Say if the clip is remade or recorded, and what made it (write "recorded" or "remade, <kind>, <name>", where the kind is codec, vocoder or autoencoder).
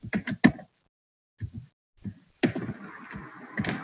recorded